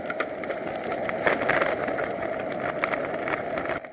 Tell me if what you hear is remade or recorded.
recorded